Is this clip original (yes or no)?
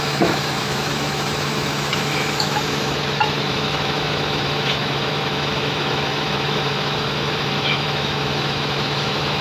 no